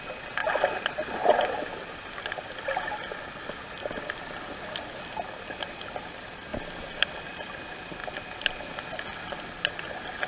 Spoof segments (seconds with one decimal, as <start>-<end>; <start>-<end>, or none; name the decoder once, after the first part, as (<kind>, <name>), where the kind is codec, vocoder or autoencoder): none